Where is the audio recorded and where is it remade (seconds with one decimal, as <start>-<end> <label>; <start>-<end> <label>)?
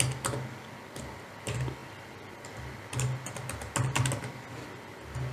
0.0-5.3 recorded